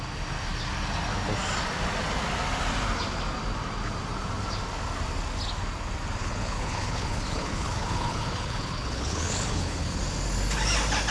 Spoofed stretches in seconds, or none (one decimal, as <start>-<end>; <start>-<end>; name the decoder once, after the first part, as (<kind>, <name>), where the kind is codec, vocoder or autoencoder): 6.2-10.0 (codec, HILCodec)